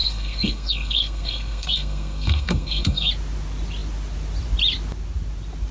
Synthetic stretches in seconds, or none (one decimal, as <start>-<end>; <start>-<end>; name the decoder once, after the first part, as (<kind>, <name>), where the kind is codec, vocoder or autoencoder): 0.0-3.1 (codec, SNAC)